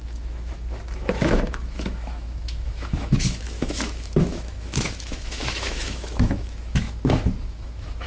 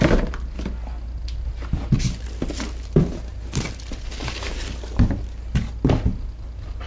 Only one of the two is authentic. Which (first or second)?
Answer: second